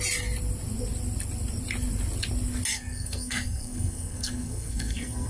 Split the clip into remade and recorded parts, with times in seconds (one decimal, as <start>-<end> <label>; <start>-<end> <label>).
0.0-2.7 recorded; 2.7-5.3 remade